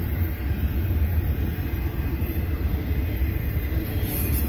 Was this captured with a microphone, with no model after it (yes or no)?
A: yes